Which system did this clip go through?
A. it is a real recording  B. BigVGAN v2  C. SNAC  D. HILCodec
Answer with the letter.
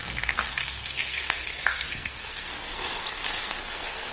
C